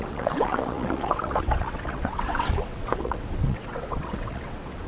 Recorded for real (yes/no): no